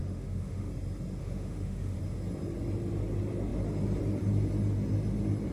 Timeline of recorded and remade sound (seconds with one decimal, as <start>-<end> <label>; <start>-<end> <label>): 0.0-0.7 remade; 0.7-1.2 recorded; 1.2-2.0 remade; 2.0-5.5 recorded